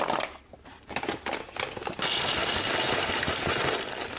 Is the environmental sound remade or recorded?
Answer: recorded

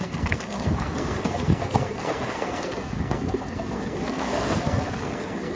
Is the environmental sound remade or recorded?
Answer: remade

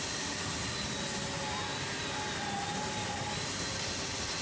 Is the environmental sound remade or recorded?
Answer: recorded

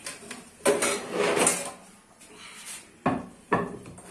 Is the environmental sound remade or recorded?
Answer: recorded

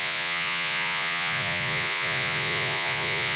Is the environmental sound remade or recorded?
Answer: remade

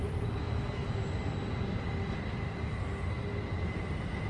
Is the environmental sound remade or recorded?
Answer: recorded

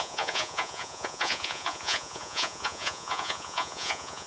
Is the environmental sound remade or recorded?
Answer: remade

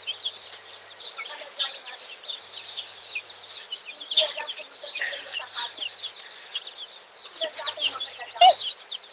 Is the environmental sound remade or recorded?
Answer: recorded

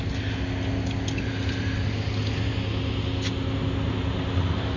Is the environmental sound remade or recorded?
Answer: recorded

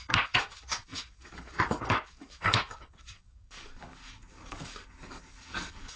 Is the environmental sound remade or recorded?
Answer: remade